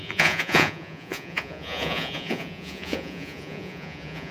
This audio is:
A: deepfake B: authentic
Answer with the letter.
A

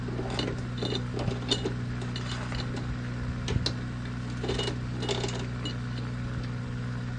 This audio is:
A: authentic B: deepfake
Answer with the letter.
A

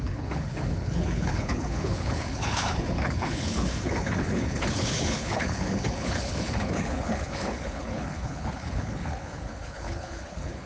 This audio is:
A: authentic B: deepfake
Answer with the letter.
B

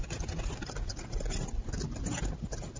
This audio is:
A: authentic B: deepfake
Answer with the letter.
A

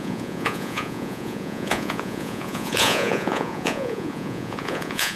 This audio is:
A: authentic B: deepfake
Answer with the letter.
B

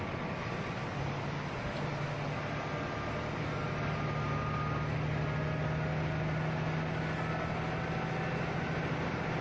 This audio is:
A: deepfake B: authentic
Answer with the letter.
B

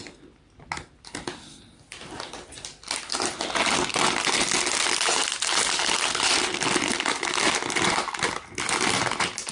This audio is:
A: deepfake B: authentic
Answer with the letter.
B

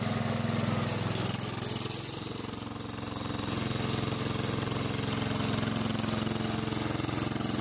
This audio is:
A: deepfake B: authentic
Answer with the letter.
B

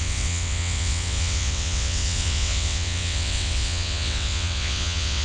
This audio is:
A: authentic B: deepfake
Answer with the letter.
B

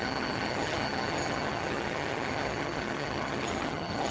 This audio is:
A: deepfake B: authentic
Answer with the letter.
A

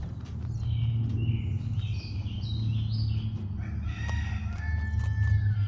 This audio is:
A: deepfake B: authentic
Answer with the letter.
B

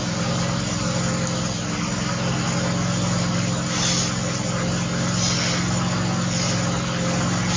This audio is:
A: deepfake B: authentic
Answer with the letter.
B